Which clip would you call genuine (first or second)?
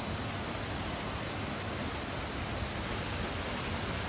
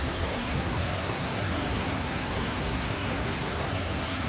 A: first